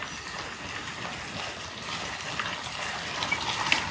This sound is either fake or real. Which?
real